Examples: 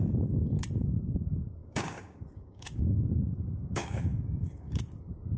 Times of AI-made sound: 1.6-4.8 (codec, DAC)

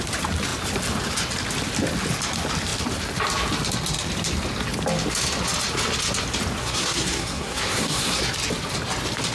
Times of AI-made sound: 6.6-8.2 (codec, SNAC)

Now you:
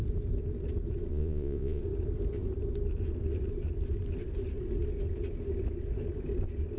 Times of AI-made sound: 1.1-1.8 (vocoder, Vocos)

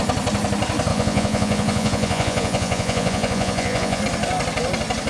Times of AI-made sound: 0.9-4.0 (vocoder, Vocos)

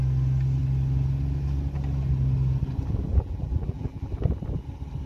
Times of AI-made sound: 3.1-4.1 (vocoder, BigVGAN v2)

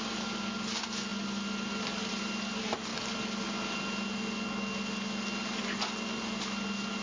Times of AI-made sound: none